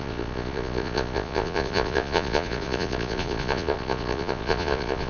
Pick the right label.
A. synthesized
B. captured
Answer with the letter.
A